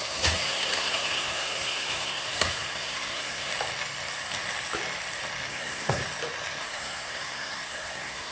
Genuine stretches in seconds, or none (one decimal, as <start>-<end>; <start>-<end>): 3.5-5.5; 6.0-6.6